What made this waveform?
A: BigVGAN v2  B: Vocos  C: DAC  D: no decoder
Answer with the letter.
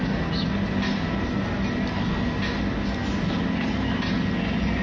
D